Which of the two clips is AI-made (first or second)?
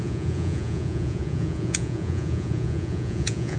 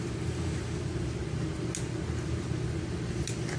first